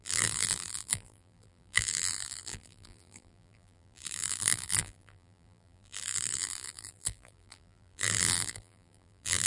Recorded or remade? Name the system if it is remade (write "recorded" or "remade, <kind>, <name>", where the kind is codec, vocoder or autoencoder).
remade, vocoder, BigVGAN v2